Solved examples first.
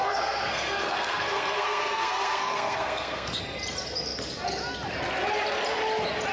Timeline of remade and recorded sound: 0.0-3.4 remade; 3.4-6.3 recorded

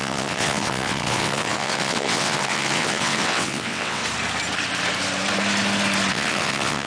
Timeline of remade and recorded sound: 0.0-4.0 remade; 4.0-6.1 recorded; 6.1-6.9 remade

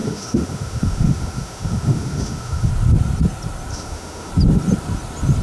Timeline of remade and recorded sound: 0.0-2.7 remade; 2.7-3.7 recorded; 3.7-4.3 remade; 4.3-5.4 recorded